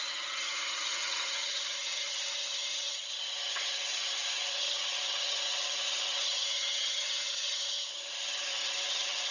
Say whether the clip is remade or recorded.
remade